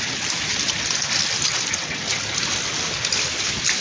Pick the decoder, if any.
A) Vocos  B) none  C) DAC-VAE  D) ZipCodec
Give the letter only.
B